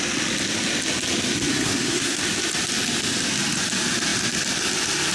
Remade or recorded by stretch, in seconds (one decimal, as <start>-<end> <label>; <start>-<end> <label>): 0.0-1.5 recorded; 1.5-2.2 remade; 2.2-5.1 recorded